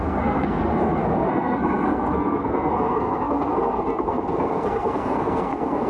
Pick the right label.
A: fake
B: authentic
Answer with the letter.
A